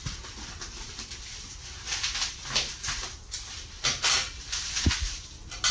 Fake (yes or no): no